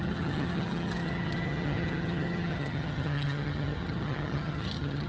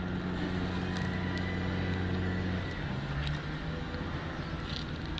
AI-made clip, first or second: first